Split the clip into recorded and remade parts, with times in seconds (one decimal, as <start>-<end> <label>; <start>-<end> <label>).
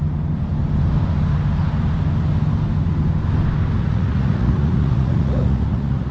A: 0.0-3.8 recorded; 3.8-6.1 remade